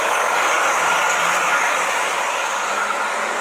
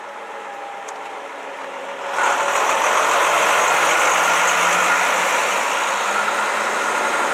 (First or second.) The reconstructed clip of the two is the first